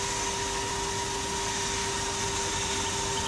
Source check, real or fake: real